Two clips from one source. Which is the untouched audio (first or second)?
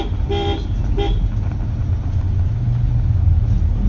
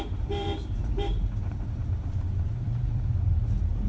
first